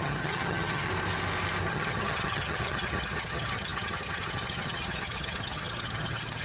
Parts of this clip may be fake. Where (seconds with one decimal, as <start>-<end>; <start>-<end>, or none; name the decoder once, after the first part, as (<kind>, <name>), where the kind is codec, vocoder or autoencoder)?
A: 0.0-0.9 (vocoder, HiFi-GAN); 1.7-6.4